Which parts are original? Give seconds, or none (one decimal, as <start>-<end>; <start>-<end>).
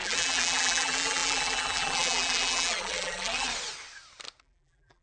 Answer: 3.5-4.4